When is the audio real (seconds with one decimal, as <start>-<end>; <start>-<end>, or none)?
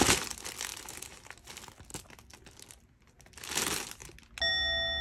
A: 0.0-0.7; 1.2-1.9; 3.2-5.0